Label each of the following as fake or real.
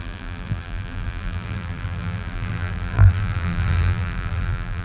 fake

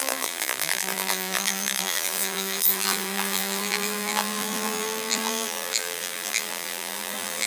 fake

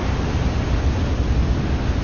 real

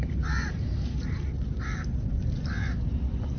real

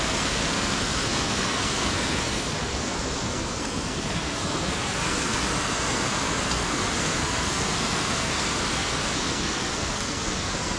fake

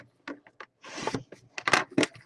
real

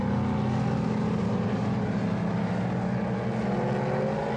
real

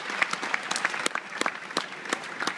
real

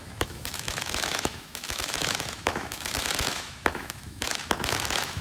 fake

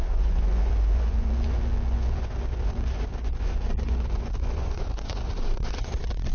fake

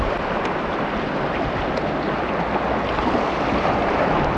real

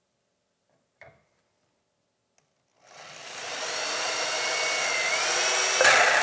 real